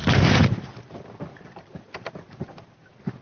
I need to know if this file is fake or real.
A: real